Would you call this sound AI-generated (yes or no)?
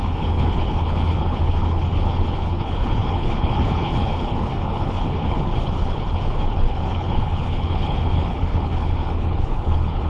yes